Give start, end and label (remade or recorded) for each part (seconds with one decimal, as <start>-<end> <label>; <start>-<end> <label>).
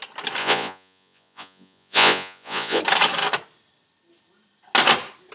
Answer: 0.0-0.4 recorded; 0.4-2.8 remade; 2.8-5.3 recorded